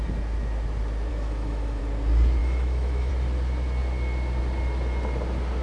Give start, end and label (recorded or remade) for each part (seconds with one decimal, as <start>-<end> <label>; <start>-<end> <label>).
0.0-1.1 recorded; 1.1-1.8 remade; 1.8-2.4 recorded; 2.4-3.1 remade; 3.1-5.6 recorded